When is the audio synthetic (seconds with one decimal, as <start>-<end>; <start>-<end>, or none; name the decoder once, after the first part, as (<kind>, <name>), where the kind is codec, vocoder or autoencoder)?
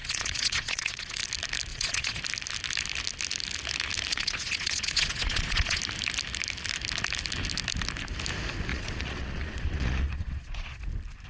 0.0-1.2 (vocoder, Vocos); 1.7-2.2; 4.1-5.8; 8.7-10.8